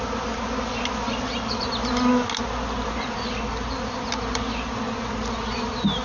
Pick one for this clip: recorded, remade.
recorded